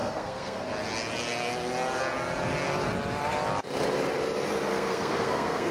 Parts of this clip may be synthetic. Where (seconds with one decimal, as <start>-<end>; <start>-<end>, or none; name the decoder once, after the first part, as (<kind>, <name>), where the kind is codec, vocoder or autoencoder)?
0.0-0.7 (codec, SNAC); 4.7-5.7